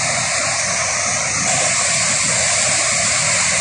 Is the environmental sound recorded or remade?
recorded